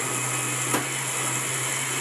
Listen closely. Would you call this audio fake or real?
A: real